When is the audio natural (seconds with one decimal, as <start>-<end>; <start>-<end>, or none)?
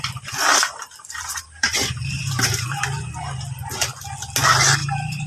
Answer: 0.0-0.5; 2.8-4.8